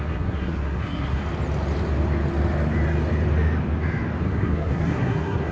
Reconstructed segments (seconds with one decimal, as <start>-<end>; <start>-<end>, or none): 0.0-1.2; 4.2-5.5